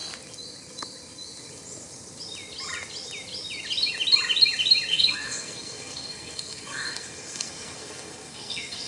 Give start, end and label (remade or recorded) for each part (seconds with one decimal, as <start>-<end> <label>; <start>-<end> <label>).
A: 0.0-4.9 recorded; 4.9-8.9 remade